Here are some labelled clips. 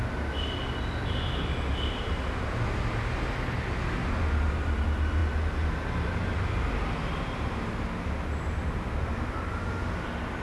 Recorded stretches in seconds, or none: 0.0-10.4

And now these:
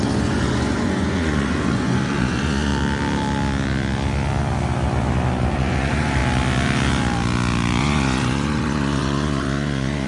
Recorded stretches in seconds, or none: 2.7-5.5; 6.2-7.8